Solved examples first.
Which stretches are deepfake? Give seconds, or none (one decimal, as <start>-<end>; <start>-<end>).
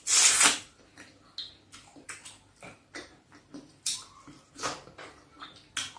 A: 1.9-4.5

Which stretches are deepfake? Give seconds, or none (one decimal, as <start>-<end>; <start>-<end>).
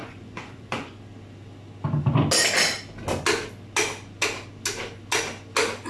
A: 0.0-1.0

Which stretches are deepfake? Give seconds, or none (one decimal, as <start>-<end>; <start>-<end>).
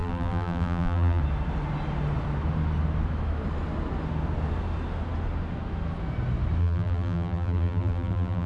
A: 0.0-1.2; 6.6-8.5